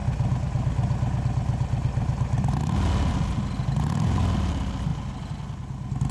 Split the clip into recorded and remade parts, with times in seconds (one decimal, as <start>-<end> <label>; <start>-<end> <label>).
0.0-6.1 recorded